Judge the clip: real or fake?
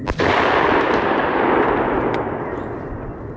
real